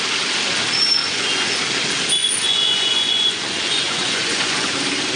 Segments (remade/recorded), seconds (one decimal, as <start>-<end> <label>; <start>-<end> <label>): 0.0-1.0 recorded; 1.0-1.6 remade; 1.6-2.2 recorded; 2.2-4.7 remade; 4.7-5.2 recorded